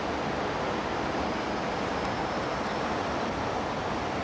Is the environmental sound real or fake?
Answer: real